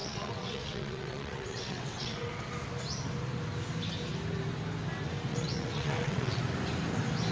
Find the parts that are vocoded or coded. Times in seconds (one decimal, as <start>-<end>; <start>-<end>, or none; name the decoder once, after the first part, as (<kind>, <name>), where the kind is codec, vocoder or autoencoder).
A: 0.0-2.3 (vocoder, WaveNeXt); 5.3-6.4